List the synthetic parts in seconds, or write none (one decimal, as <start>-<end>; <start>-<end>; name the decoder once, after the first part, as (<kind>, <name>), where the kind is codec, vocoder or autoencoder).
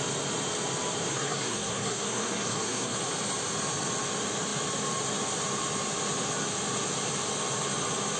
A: 1.1-3.0 (codec, SNAC)